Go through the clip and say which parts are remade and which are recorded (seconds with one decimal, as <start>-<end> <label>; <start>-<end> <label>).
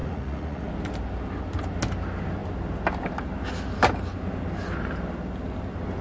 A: 0.0-0.7 remade; 0.7-6.0 recorded